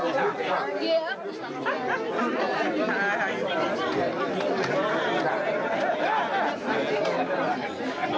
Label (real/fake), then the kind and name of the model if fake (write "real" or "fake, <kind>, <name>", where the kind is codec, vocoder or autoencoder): real